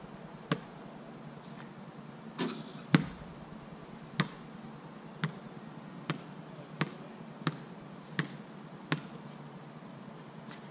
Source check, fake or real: real